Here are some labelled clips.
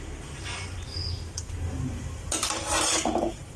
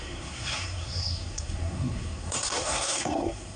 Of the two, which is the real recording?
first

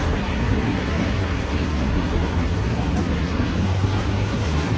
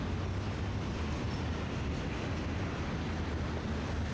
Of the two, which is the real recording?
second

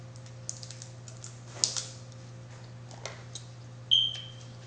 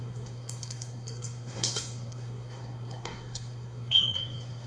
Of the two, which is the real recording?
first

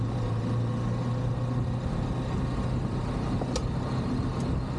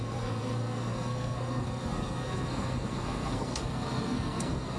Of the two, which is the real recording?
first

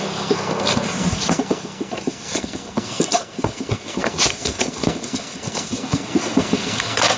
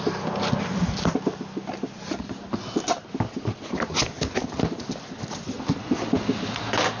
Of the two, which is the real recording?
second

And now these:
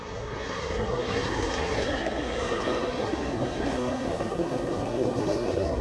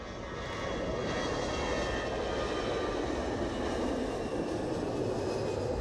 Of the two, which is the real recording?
second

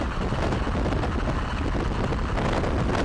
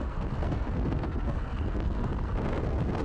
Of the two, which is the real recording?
first